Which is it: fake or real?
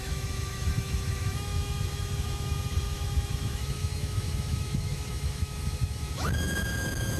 fake